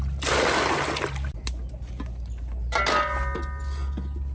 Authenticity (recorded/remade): recorded